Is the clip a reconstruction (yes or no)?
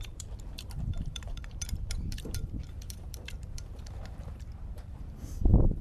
yes